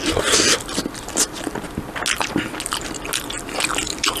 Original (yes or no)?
yes